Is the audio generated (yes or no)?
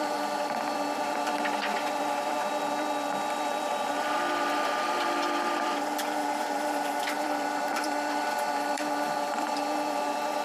yes